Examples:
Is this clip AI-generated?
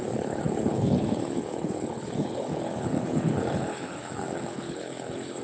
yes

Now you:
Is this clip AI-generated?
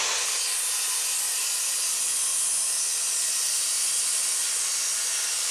no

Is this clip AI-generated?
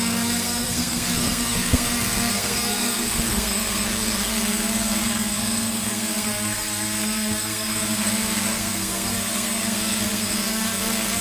yes